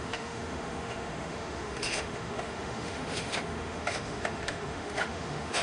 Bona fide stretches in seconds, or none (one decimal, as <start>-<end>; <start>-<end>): none